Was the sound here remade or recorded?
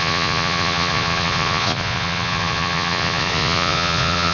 remade